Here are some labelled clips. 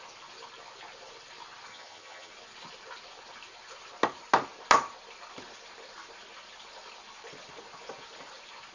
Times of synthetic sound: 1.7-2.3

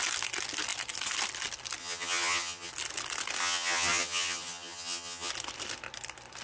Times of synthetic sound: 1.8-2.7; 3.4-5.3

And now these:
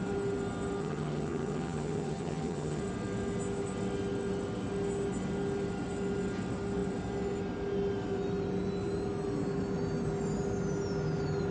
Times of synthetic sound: 0.8-2.8

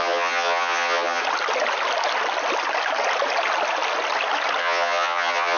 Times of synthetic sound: 0.0-1.2; 4.6-5.6